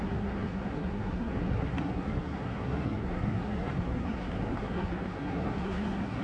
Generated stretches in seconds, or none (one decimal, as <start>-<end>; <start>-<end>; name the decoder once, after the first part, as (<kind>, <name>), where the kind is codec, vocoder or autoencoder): 0.0-6.2 (codec, SNAC)